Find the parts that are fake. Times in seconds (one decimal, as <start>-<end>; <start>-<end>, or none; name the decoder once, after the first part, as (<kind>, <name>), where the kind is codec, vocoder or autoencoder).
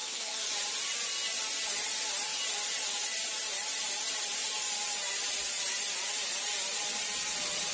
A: 0.0-0.5 (codec, SNAC)